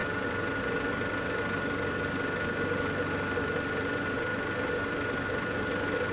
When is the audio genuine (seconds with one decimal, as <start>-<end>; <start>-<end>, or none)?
0.0-6.1